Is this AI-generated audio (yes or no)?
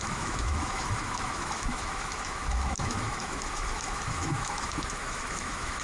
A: yes